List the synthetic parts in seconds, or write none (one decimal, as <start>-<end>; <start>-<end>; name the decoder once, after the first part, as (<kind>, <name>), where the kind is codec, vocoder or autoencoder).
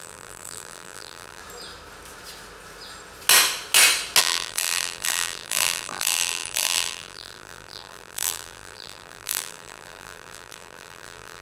0.0-1.4 (vocoder, BigVGAN v2); 4.2-11.4